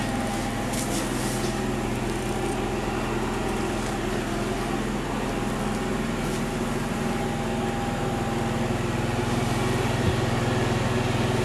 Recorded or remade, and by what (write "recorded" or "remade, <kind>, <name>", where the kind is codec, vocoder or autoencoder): recorded